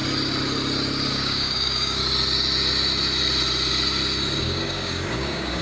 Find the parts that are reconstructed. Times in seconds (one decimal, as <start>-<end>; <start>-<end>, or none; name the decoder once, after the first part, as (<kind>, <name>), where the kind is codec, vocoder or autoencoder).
1.1-2.0 (codec, DAC); 4.4-5.6